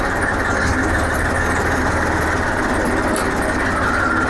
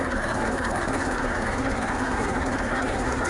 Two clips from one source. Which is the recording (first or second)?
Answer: first